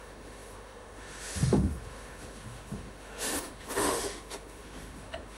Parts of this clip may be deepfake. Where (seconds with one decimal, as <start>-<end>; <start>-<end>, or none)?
0.0-5.4